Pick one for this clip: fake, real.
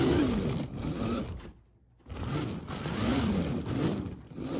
real